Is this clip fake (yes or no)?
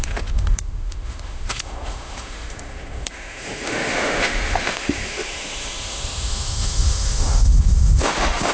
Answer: yes